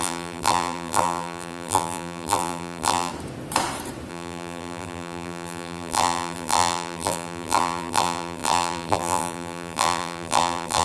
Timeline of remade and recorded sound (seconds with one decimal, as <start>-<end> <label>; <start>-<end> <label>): 0.0-3.1 remade; 3.1-4.1 recorded; 4.1-10.8 remade